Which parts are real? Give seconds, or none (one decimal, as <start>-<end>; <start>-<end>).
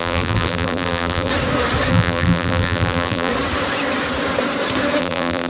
1.3-1.9; 3.3-5.0